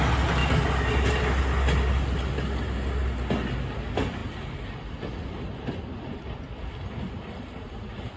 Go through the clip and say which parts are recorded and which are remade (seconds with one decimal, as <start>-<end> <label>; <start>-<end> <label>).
0.0-8.2 recorded